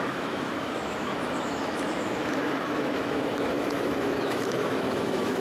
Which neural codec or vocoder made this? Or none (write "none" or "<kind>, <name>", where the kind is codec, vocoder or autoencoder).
autoencoder, DAC-VAE